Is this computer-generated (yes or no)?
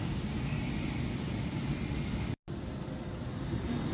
no